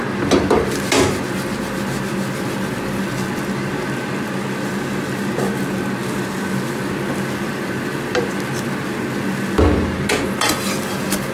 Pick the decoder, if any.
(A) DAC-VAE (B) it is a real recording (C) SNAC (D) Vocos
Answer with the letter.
B